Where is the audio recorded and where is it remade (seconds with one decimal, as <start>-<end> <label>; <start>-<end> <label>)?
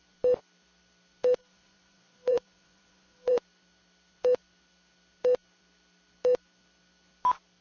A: 0.0-1.4 recorded; 1.4-3.4 remade; 3.4-7.6 recorded